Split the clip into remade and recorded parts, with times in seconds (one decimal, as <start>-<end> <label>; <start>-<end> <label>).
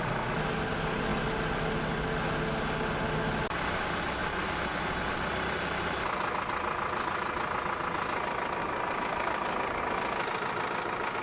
0.0-8.6 recorded; 8.6-9.8 remade; 9.8-11.2 recorded